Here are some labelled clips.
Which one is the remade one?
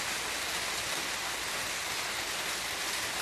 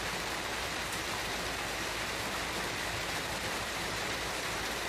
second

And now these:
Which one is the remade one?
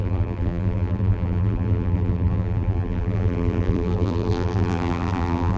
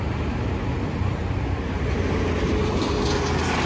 first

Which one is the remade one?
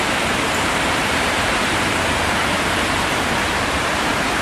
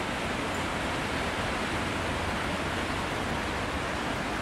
first